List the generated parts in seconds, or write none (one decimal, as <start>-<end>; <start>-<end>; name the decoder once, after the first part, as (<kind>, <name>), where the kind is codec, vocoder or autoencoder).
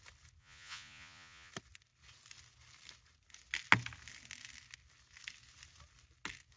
0.4-1.5 (vocoder, Vocos)